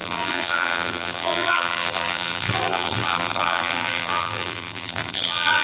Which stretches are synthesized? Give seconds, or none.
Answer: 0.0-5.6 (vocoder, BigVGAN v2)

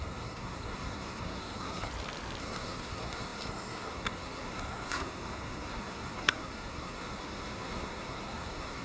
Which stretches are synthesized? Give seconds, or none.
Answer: 0.0-1.9 (codec, SNAC); 2.4-8.8

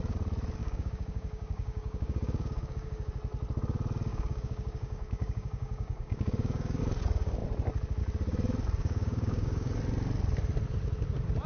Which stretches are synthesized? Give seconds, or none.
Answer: 0.6-3.1 (codec, DAC); 4.1-6.8; 8.8-9.7

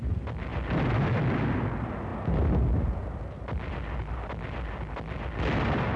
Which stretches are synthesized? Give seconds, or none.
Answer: none

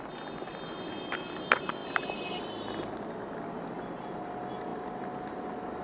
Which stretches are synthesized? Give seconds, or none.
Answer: none

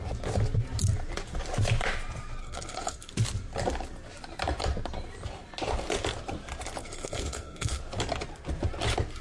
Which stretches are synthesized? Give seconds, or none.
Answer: 2.4-3.1 (codec, SNAC); 6.8-7.8

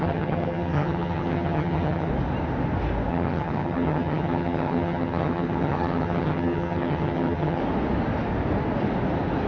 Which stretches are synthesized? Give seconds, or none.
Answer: 0.0-2.1 (vocoder, HiFi-GAN); 3.1-7.6